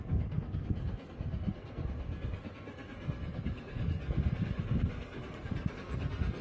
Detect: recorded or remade remade